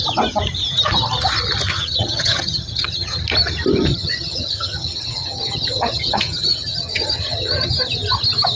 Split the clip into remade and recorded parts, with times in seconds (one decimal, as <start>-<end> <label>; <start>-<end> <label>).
0.0-1.7 recorded; 1.7-3.2 remade; 3.2-3.9 recorded; 3.9-7.7 remade; 7.7-8.6 recorded